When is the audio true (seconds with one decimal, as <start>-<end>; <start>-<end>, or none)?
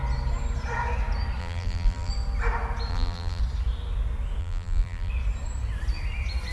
0.0-1.4; 2.1-2.9; 3.4-4.4; 5.1-6.5